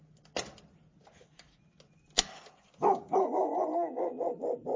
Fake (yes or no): no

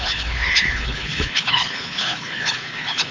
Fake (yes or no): yes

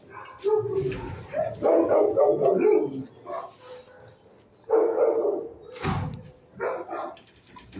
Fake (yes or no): no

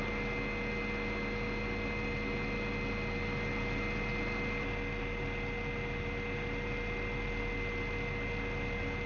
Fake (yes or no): no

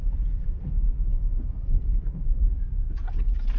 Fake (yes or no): yes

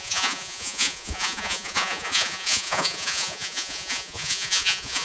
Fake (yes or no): yes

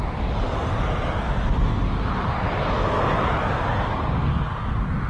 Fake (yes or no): no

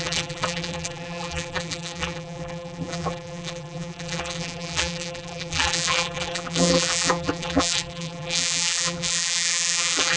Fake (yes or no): yes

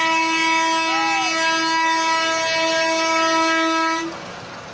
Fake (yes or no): no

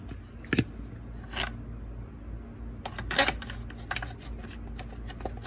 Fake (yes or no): no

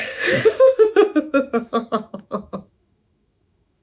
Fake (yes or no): yes